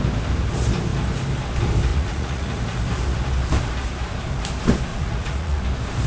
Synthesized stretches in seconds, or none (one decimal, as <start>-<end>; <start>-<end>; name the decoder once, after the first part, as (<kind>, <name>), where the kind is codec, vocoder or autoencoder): 1.9-2.6 (vocoder, Vocos); 4.9-5.6